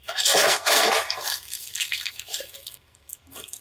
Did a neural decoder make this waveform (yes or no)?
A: yes